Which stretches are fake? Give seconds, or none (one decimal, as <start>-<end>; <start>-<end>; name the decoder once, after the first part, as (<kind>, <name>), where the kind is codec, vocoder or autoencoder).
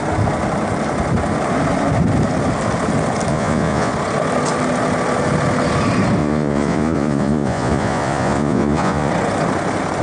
3.3-3.9 (vocoder, Vocos); 6.2-9.1